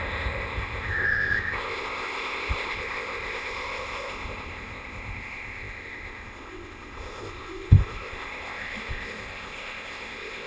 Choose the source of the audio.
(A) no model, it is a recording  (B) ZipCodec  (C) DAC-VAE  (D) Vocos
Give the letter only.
B